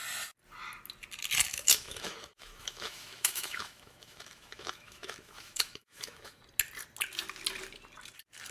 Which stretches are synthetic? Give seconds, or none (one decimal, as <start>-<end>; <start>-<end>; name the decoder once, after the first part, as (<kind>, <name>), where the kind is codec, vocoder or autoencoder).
1.5-6.4 (autoencoder, DAC-VAE)